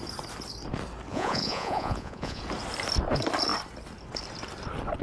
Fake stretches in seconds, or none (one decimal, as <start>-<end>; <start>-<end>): 1.1-2.4